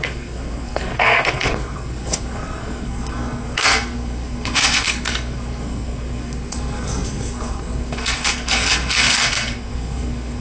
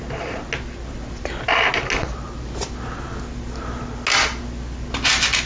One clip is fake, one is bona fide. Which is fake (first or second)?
first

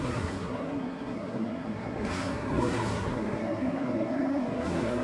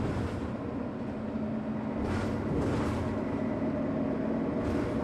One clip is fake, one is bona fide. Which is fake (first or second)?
first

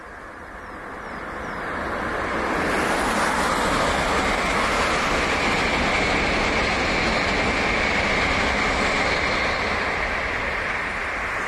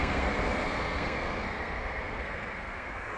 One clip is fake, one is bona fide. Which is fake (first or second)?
second